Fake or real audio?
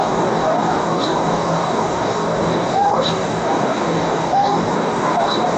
fake